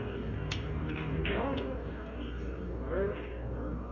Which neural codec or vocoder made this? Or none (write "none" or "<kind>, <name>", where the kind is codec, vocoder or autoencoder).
codec, DAC